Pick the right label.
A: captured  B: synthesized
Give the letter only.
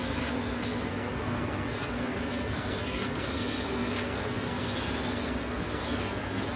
B